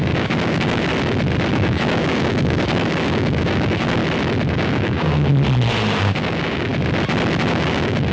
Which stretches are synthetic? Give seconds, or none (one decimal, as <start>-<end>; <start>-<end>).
0.0-0.9; 1.5-4.0; 4.5-5.3; 6.0-6.7; 7.5-8.1